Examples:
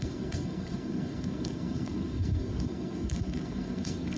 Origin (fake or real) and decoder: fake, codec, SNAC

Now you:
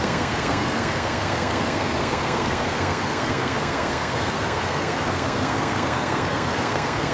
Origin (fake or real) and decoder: fake, codec, SNAC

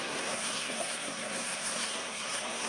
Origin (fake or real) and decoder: fake, codec, SNAC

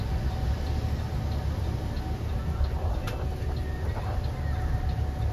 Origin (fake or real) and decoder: real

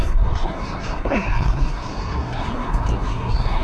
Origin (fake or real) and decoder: fake, codec, SNAC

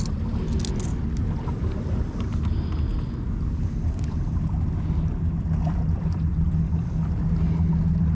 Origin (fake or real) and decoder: real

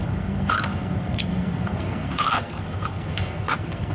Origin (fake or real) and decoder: fake, codec, SNAC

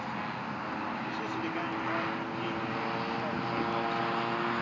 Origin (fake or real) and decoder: real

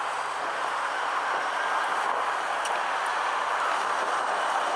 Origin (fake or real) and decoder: real